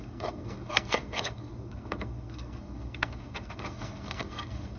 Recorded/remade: remade